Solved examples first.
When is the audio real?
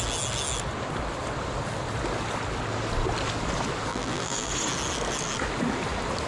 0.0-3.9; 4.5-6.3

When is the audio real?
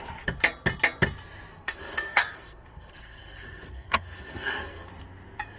0.0-1.5; 4.9-5.6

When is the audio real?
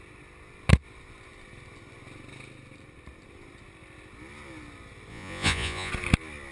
0.0-5.1; 5.9-6.5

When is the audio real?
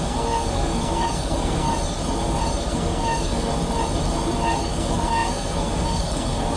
1.7-2.7; 3.5-4.6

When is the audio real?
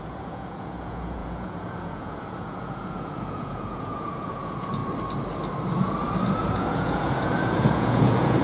4.8-6.4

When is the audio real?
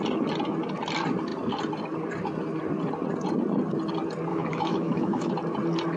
0.0-4.3; 5.3-6.0